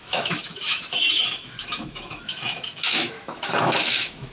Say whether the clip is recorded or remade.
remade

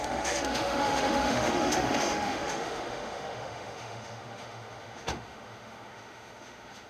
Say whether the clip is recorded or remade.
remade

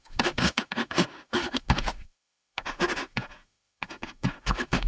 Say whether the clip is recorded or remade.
remade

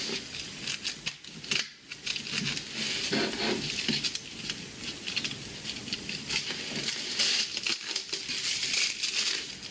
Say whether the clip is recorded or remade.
recorded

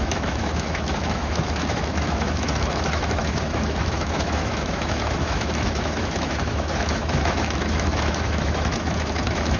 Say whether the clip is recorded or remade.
remade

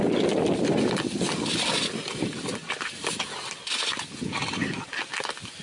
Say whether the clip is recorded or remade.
recorded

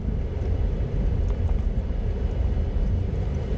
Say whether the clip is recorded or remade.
recorded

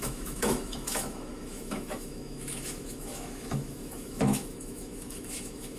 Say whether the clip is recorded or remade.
remade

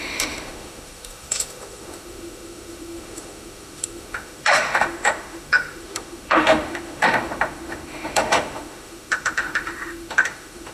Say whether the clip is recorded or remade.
remade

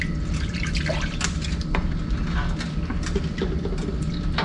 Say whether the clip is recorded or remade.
recorded